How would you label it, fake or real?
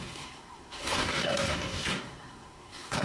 fake